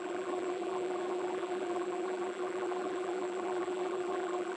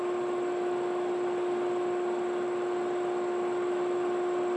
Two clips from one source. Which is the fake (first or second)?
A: first